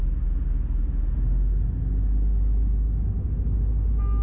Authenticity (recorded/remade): recorded